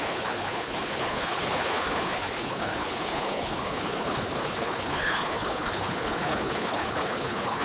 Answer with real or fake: fake